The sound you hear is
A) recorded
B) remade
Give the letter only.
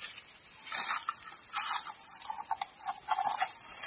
A